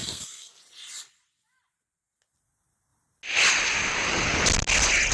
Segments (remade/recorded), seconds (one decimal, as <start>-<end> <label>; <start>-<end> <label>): 0.0-0.6 remade; 0.6-5.1 recorded